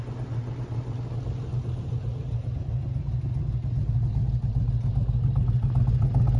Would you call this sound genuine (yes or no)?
yes